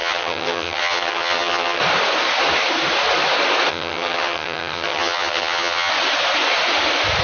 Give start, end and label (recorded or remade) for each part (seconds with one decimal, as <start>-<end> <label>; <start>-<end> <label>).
0.0-1.8 remade; 1.8-3.7 recorded; 3.7-5.9 remade; 5.9-7.2 recorded